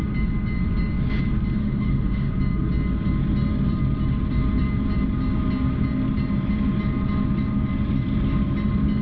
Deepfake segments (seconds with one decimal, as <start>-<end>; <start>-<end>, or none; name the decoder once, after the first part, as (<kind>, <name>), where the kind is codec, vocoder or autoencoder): 1.6-2.3 (autoencoder, DAC-VAE)